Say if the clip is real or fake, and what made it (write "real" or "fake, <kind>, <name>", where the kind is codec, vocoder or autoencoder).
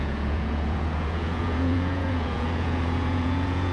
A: fake, vocoder, Vocos